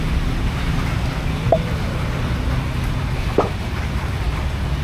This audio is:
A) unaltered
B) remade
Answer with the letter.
A